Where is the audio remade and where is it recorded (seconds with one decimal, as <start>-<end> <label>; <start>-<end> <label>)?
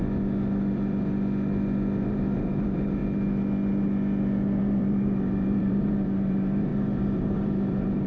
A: 0.0-2.1 recorded; 2.1-3.0 remade; 3.0-4.6 recorded; 4.6-8.1 remade